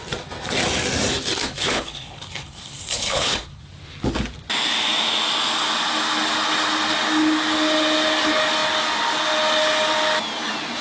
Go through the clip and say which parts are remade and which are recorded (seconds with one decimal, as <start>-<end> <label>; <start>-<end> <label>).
0.0-1.4 recorded; 1.4-3.6 remade; 3.6-10.8 recorded